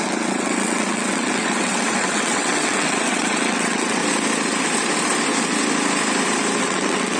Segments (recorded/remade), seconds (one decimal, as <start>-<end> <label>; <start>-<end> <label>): 0.0-4.0 remade; 4.0-6.6 recorded; 6.6-7.2 remade